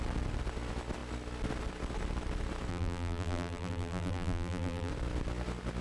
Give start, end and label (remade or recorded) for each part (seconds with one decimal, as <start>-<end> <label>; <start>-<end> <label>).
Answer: 0.0-2.7 recorded; 2.7-4.9 remade; 4.9-5.8 recorded